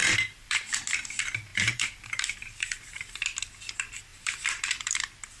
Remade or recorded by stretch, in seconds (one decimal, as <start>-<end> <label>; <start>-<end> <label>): 0.0-0.7 remade; 0.7-1.5 recorded; 1.5-3.2 remade; 3.2-4.1 recorded; 4.1-5.0 remade; 5.0-5.4 recorded

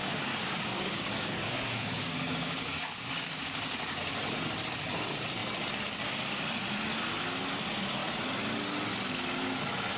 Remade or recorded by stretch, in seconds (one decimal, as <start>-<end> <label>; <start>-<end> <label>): 0.0-4.1 remade; 4.1-10.0 recorded

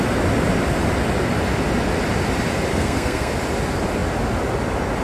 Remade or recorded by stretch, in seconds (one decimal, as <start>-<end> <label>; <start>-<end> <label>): 0.0-2.7 recorded; 2.7-3.3 remade; 3.3-5.0 recorded

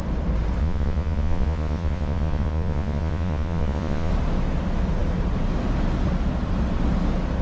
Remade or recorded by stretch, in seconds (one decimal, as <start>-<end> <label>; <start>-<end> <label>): 0.0-0.6 recorded; 0.6-4.1 remade; 4.1-7.4 recorded

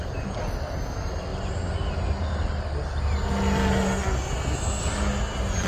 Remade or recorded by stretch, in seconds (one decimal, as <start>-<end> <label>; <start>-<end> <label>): 0.0-5.7 recorded

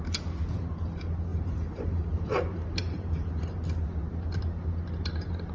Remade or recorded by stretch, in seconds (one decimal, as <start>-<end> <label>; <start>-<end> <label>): 0.0-1.3 recorded; 1.3-3.5 remade; 3.5-5.5 recorded